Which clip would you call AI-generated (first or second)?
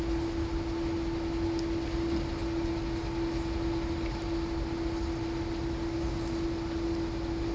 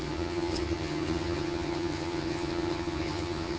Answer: second